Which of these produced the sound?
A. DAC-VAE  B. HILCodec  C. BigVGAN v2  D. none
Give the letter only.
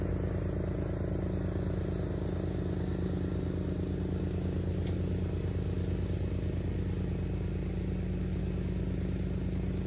D